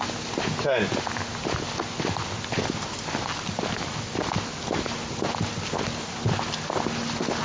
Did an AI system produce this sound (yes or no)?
no